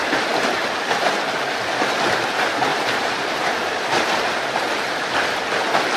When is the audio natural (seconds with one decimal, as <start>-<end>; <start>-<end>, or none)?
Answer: 0.0-2.7; 4.7-6.0